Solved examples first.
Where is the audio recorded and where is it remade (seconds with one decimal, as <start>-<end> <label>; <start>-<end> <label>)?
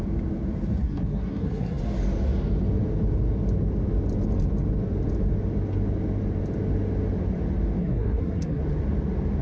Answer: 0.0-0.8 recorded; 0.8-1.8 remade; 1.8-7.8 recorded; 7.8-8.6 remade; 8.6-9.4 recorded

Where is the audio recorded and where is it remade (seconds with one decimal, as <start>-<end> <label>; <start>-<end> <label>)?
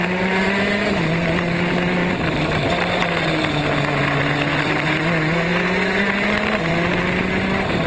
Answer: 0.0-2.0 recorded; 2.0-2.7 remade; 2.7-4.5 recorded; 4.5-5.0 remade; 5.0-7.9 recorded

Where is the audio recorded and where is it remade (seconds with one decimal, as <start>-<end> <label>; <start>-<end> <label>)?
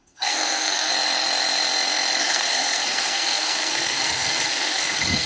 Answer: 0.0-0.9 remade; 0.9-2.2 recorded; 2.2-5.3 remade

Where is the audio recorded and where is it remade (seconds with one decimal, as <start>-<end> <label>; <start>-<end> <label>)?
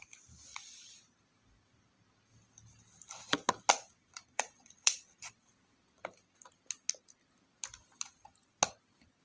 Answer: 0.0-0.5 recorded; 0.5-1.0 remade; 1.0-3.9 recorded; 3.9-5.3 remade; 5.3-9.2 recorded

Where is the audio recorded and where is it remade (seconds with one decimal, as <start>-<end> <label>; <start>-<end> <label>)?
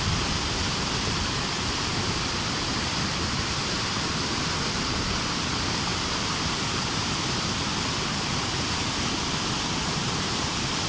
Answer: 0.0-10.9 remade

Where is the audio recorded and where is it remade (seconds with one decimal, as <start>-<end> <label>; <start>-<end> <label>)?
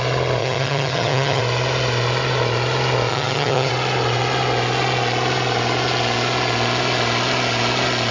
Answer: 0.0-0.4 recorded; 0.4-1.4 remade; 1.4-3.1 recorded; 3.1-3.7 remade; 3.7-8.1 recorded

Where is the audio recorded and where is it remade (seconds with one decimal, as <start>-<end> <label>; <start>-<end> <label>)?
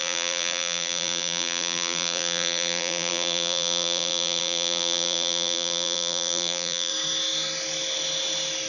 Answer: 0.0-6.9 remade; 6.9-8.7 recorded